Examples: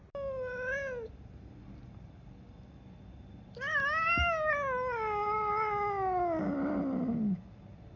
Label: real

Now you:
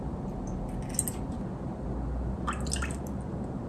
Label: real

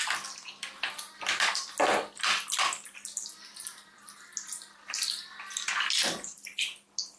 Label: real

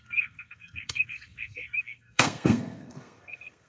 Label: fake